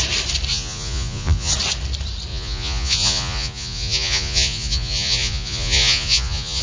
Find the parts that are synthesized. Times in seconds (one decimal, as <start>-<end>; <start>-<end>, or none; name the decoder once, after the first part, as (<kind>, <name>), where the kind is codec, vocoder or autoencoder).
0.5-1.5 (vocoder, Vocos); 2.3-6.6